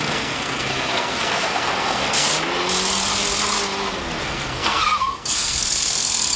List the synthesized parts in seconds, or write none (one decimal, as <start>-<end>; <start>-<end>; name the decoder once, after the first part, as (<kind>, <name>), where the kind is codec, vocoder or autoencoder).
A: 0.0-2.3 (codec, SNAC); 4.2-6.4